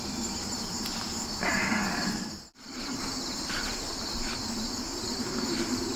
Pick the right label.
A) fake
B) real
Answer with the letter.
A